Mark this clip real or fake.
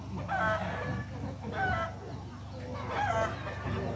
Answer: real